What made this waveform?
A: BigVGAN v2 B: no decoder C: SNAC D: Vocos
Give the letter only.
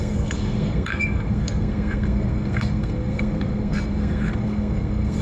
C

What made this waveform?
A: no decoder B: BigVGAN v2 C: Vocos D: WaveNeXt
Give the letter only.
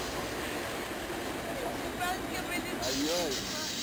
A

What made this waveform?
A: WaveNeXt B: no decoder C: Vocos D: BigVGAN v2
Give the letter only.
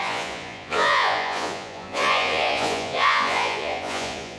C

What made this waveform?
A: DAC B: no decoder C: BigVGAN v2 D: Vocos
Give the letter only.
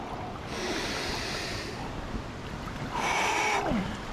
B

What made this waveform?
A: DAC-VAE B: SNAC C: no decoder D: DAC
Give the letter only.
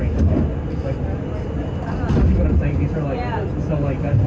C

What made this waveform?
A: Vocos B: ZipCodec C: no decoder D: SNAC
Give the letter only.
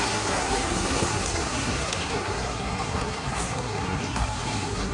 D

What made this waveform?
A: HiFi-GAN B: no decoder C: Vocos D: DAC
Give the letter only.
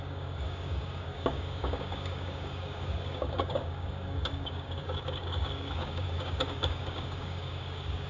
D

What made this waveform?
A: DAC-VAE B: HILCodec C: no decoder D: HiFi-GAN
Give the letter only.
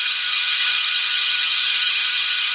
D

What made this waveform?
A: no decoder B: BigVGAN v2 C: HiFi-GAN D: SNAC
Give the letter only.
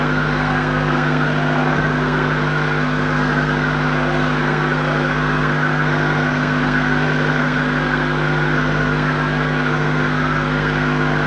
D